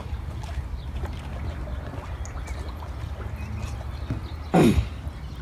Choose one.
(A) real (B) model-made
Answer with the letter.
A